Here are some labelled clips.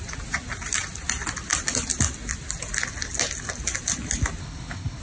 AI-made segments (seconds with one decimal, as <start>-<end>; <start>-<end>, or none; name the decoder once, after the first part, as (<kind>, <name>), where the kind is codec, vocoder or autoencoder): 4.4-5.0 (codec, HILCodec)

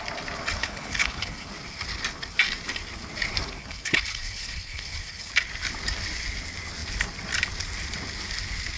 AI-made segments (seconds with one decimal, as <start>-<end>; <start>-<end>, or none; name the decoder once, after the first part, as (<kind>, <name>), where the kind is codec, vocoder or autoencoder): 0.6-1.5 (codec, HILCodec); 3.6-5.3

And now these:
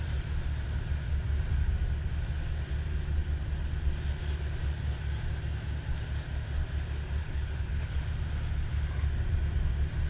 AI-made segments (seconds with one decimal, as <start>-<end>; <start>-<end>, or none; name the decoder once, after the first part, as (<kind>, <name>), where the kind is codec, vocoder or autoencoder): 7.2-8.0 (codec, HILCodec)

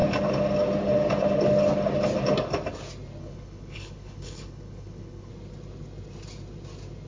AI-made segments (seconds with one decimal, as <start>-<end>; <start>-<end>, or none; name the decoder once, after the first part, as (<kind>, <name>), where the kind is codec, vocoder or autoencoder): 3.2-5.3 (codec, HILCodec)

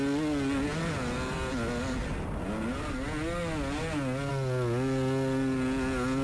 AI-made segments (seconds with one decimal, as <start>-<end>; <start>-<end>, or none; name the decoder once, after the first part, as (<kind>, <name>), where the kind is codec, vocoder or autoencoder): none